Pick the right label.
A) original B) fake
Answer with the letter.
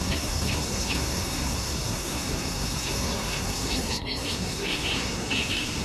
B